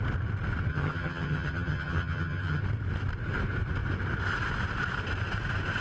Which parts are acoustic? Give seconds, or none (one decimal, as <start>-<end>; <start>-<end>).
0.0-0.7; 2.6-5.8